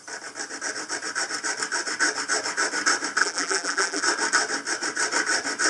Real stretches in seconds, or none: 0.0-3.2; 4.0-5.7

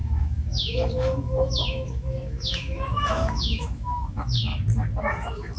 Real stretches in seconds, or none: 4.5-5.0

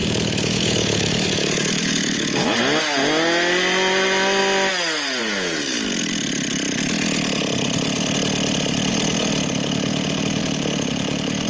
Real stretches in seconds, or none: 2.6-11.5

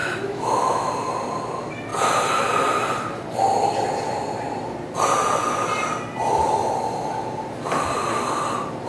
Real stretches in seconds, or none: 0.9-8.9

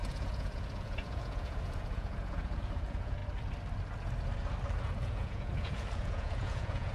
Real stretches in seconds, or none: 3.2-4.8

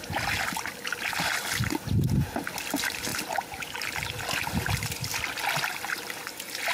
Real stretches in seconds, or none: 0.0-6.7

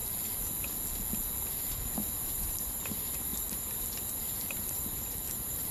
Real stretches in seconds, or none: 0.0-2.3